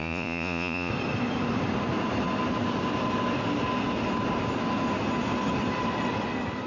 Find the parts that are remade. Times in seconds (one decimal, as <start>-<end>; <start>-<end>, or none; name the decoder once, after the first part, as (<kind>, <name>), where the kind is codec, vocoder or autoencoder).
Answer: 0.0-0.9 (vocoder, Vocos)